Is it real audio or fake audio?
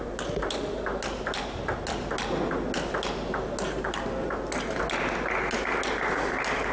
real